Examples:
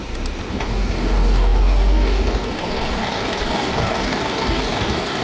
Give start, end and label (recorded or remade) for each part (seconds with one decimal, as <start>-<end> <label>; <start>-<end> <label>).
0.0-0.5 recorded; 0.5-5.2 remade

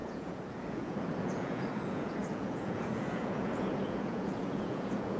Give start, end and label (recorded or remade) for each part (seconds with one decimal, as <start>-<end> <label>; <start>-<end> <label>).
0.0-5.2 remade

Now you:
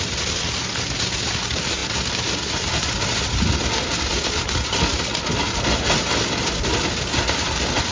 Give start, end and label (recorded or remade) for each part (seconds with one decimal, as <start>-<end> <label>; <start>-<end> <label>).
0.0-7.9 recorded